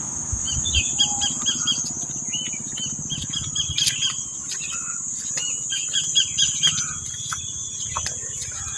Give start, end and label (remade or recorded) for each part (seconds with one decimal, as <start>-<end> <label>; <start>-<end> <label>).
0.0-8.8 recorded